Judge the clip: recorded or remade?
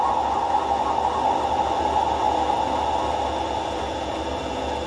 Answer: recorded